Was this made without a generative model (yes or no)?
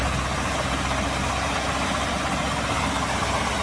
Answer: yes